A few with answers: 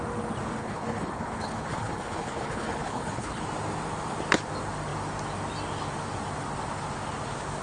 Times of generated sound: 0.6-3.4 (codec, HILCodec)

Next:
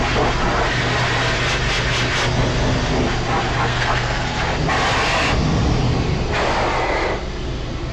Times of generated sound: 3.7-4.4 (codec, SNAC)

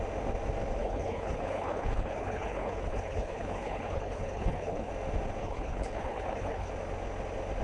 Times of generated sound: 0.8-4.9 (codec, HILCodec); 5.4-6.7

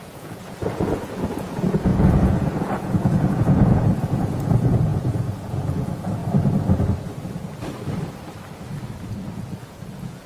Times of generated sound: 0.0-6.2 (vocoder, Vocos); 9.1-10.3

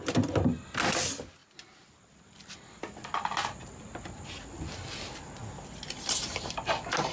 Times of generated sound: none

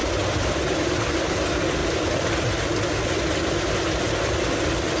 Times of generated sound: none

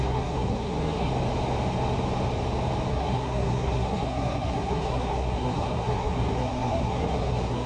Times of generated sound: 0.0-1.1 (codec, SNAC); 2.9-7.7